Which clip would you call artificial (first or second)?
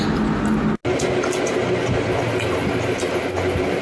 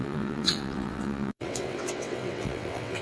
second